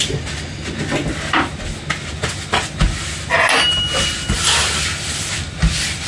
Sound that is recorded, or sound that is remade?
recorded